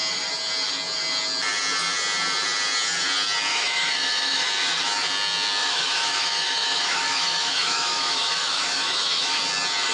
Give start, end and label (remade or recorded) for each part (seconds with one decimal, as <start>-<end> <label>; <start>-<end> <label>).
0.0-3.5 recorded; 3.5-4.5 remade; 4.5-5.6 recorded; 5.6-9.4 remade; 9.4-9.9 recorded